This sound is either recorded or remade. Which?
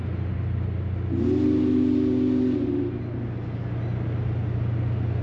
recorded